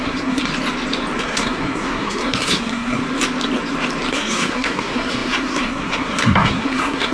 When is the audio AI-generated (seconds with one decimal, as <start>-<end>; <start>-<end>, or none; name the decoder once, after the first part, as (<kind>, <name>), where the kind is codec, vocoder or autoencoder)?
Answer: 0.0-0.5 (codec, SNAC); 1.2-3.0; 4.1-7.1